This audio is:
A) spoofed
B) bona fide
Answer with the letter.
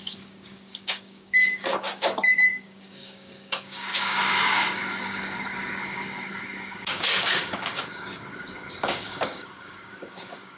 A